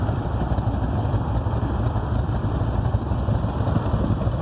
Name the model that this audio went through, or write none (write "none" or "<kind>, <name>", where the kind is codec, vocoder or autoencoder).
none